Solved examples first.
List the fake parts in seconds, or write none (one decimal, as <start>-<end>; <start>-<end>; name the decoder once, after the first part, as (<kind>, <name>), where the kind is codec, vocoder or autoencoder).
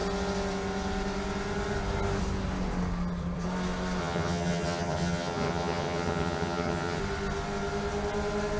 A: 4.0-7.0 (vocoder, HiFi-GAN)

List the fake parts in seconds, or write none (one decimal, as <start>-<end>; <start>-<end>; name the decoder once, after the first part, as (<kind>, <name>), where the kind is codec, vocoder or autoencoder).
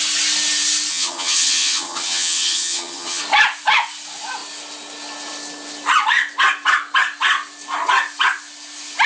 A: 0.9-3.2 (vocoder, HiFi-GAN)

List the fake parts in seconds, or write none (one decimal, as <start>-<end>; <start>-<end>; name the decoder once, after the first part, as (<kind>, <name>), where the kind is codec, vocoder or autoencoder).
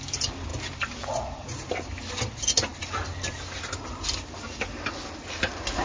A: none